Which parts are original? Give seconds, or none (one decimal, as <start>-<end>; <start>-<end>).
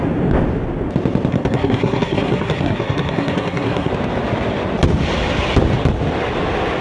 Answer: 0.0-1.3; 3.9-6.8